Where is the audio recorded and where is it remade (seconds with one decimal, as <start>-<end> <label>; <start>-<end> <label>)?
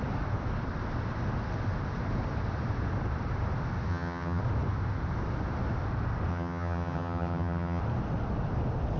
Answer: 0.0-3.9 recorded; 3.9-4.4 remade; 4.4-6.3 recorded; 6.3-7.8 remade; 7.8-9.0 recorded